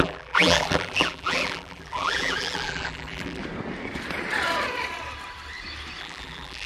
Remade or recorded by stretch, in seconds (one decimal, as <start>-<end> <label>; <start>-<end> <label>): 0.0-3.4 remade; 3.4-6.0 recorded; 6.0-6.7 remade